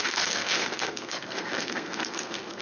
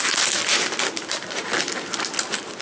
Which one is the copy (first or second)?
first